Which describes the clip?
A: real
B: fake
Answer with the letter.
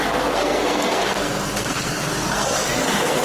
B